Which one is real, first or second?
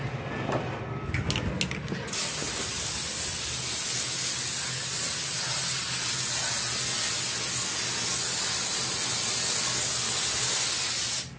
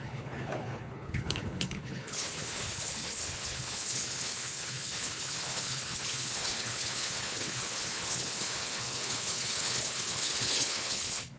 first